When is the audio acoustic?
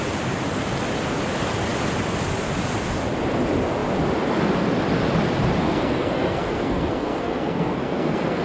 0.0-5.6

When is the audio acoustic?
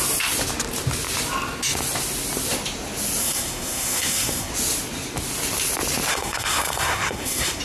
0.0-3.2; 4.5-6.1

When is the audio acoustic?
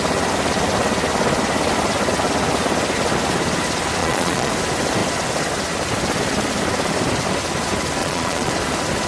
0.0-4.0; 4.5-8.0; 8.5-9.1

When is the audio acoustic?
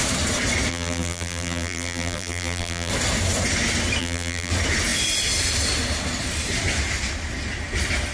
0.0-0.7; 2.9-4.0; 4.5-8.1